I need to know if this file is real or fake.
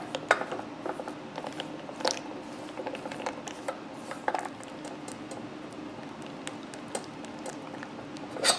real